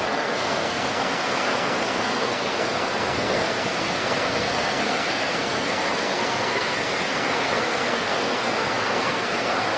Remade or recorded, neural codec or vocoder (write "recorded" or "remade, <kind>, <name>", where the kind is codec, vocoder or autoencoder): remade, codec, SNAC